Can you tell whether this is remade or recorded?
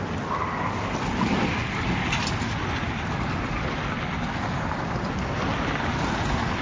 recorded